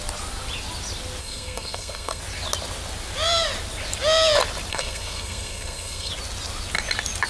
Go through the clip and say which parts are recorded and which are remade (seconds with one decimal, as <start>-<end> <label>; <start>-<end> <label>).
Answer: 0.0-1.2 recorded; 1.2-2.2 remade; 2.2-4.7 recorded; 4.7-6.1 remade; 6.1-7.3 recorded